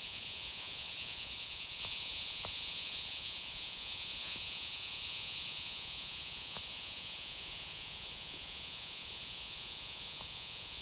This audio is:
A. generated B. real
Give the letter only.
A